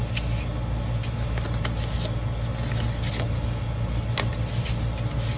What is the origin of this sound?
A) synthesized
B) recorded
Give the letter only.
B